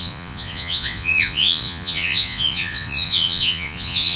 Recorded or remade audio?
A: remade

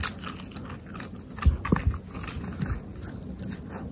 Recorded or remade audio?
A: recorded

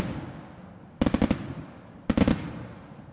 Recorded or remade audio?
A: recorded